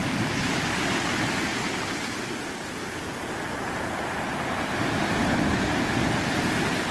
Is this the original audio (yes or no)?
yes